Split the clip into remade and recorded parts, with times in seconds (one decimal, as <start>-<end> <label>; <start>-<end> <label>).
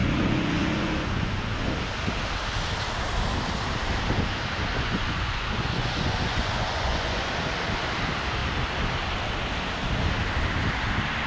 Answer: 0.0-1.7 remade; 1.7-4.7 recorded; 4.7-7.3 remade; 7.3-11.3 recorded